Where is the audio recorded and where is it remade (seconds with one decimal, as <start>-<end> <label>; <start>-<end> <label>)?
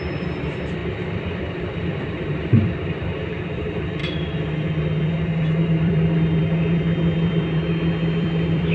0.0-0.8 remade; 0.8-1.3 recorded; 1.3-4.0 remade; 4.0-5.0 recorded; 5.0-8.7 remade